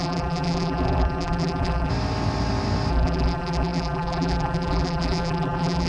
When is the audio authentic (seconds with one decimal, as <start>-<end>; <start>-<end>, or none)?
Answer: 1.9-2.9